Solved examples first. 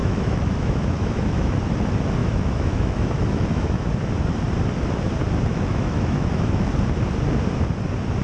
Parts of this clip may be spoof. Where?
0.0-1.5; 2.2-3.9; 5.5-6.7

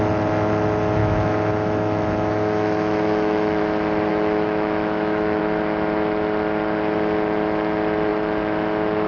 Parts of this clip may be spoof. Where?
1.0-3.6; 4.1-5.4

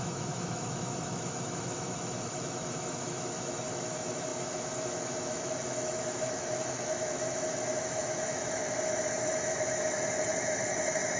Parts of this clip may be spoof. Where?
0.0-11.2

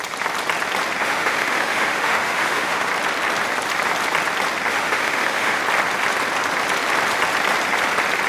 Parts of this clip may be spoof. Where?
1.0-2.9; 4.7-5.6